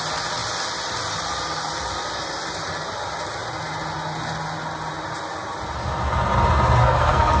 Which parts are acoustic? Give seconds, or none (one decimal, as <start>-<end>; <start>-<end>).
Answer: 0.0-6.8